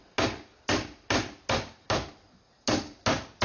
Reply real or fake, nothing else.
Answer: real